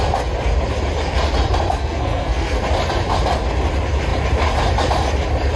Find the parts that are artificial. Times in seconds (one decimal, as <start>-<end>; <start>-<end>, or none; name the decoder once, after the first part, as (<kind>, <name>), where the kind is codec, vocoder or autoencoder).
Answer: 1.8-2.6 (codec, SNAC)